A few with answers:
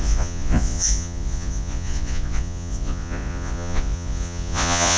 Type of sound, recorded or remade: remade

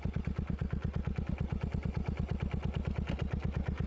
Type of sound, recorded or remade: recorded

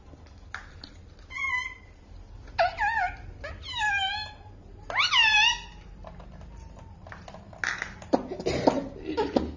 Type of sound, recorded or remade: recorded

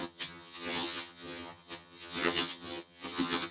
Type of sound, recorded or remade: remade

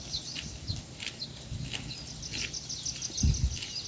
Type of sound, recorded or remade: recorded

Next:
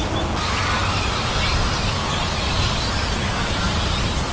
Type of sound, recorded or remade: recorded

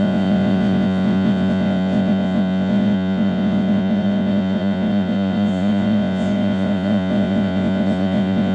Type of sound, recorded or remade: remade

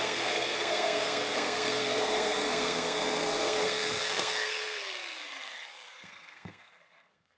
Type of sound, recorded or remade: remade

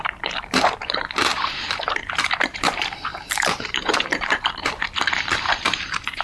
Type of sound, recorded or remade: remade